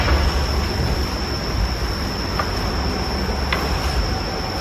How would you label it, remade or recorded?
recorded